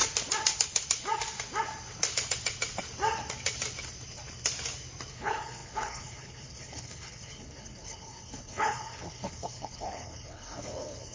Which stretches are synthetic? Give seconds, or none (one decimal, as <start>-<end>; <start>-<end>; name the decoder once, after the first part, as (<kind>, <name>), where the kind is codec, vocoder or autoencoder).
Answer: 5.1-11.1 (codec, HILCodec)